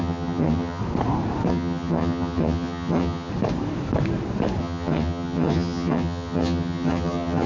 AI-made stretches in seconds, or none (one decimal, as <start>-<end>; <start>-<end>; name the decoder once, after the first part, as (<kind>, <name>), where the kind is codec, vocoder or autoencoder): 0.0-0.8 (vocoder, HiFi-GAN); 1.5-3.3; 4.6-7.5